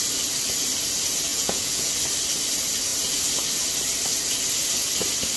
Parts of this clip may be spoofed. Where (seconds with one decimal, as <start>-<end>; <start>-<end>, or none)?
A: 1.3-1.9